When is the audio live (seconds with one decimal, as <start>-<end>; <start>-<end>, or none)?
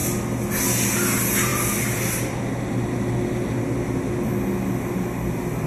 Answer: 0.0-5.7